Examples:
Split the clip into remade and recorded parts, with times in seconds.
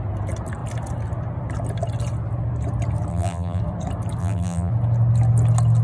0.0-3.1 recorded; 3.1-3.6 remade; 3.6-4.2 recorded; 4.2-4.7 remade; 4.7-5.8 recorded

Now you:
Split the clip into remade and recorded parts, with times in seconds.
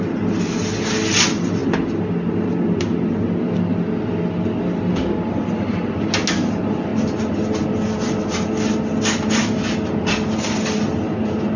0.0-11.6 recorded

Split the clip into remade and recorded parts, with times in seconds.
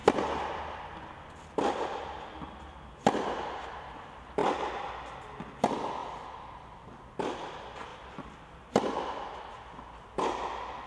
0.0-4.4 recorded; 4.4-5.2 remade; 5.2-7.9 recorded; 7.9-9.5 remade; 9.5-10.9 recorded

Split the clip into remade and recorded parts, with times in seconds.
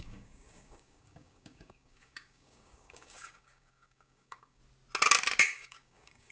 0.0-4.6 remade; 4.6-5.4 recorded; 5.4-6.3 remade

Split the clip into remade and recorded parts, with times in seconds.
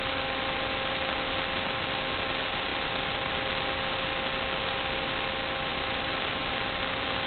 0.0-2.7 recorded; 2.7-3.3 remade; 3.3-5.7 recorded; 5.7-6.3 remade; 6.3-7.3 recorded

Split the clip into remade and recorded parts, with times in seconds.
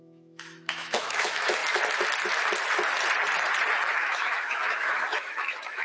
0.0-1.6 remade; 1.6-3.9 recorded; 3.9-5.8 remade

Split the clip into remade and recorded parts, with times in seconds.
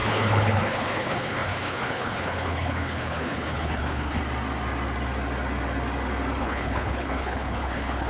0.0-4.2 remade; 4.2-6.4 recorded; 6.4-8.1 remade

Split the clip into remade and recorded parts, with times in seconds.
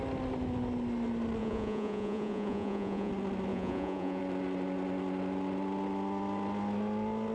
0.0-1.4 recorded; 1.4-3.1 remade; 3.1-3.5 recorded; 3.5-4.2 remade; 4.2-7.3 recorded